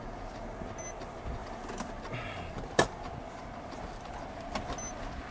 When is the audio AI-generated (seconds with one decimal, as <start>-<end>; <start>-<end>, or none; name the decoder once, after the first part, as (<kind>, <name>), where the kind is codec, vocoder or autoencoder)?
none